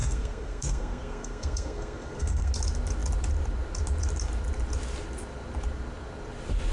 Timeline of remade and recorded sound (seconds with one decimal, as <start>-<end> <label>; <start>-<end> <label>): 0.0-2.5 remade; 2.5-6.7 recorded